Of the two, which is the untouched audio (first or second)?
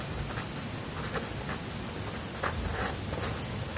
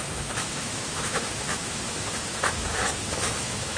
first